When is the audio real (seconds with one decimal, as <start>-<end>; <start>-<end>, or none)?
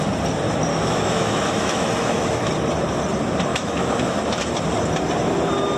0.0-0.7; 2.5-3.5; 4.2-5.8